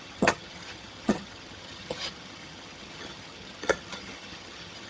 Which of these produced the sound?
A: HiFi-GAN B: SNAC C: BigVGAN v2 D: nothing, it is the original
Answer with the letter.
A